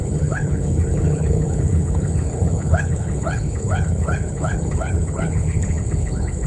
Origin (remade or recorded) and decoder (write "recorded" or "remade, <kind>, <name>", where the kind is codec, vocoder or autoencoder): remade, codec, HILCodec